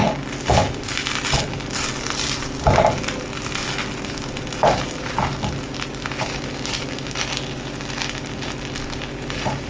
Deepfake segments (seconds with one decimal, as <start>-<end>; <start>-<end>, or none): none